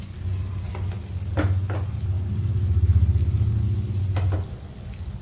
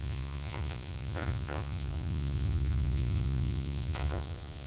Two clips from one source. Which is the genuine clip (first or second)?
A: first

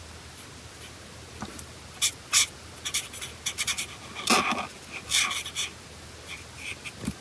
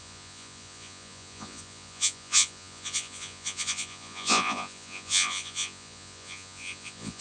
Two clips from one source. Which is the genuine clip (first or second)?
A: first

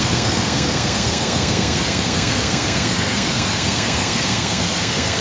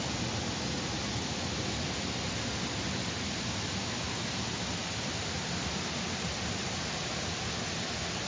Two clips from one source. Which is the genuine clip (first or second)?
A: second